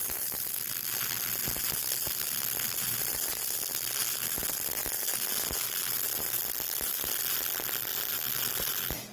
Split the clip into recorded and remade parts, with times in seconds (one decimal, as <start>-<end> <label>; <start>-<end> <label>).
0.0-9.1 recorded